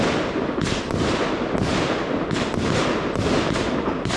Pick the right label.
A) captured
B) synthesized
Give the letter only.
A